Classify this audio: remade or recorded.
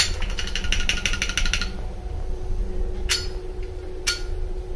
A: recorded